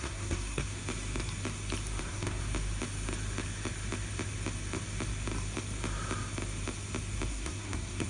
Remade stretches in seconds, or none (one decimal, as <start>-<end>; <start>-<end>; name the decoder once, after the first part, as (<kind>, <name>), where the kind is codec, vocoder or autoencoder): 0.0-0.8 (codec, SNAC); 2.0-2.4; 7.3-8.1